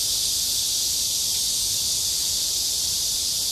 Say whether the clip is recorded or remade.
recorded